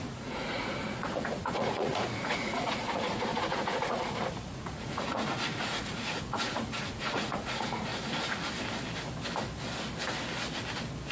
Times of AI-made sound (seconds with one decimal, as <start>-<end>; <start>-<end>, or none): 0.0-7.9